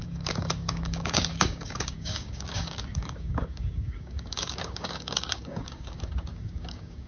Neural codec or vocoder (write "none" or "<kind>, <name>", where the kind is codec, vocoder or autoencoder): codec, DAC